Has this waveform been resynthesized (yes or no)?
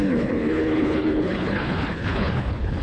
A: yes